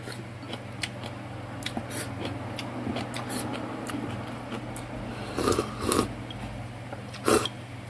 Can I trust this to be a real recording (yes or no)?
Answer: yes